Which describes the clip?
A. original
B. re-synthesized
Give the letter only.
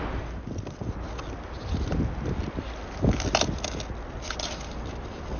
A